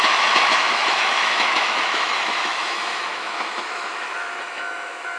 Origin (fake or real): fake